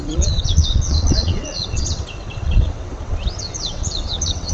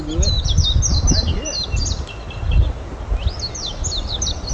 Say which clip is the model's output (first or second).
first